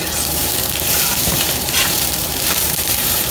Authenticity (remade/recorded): remade